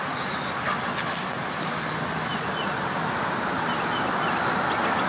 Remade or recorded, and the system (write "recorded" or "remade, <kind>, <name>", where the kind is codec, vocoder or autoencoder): recorded